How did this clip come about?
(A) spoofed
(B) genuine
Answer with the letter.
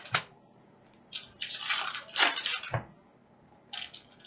B